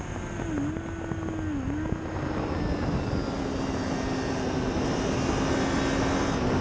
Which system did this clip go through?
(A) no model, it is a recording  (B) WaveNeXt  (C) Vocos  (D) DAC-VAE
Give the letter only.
A